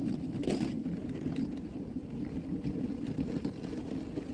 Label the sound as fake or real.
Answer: real